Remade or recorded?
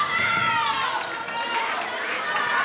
recorded